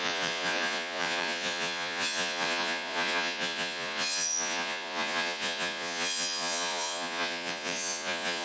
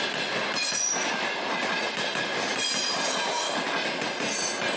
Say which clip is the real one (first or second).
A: second